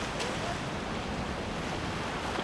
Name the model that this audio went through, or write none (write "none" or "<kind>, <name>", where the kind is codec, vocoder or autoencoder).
none